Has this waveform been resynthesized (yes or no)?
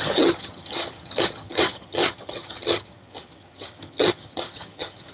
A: yes